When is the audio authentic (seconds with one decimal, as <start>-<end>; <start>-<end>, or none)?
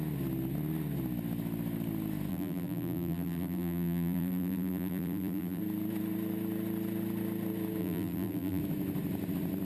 0.0-2.3; 5.6-7.8; 8.6-9.6